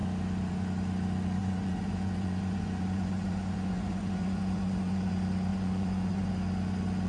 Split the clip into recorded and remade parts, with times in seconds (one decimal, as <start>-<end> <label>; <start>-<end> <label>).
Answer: 0.0-1.4 recorded; 1.4-5.1 remade; 5.1-5.5 recorded; 5.5-6.3 remade; 6.3-7.1 recorded